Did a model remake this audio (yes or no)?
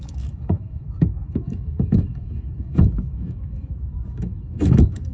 yes